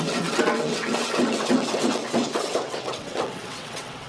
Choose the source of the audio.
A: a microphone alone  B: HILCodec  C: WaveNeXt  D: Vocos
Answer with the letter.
C